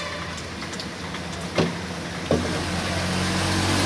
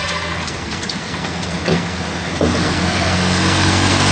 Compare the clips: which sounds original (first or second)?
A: first